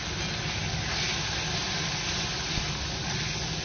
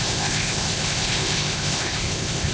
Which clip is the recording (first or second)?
first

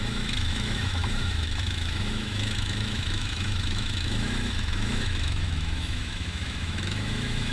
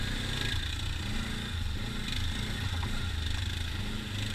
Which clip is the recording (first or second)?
second